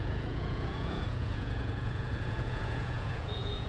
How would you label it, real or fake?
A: fake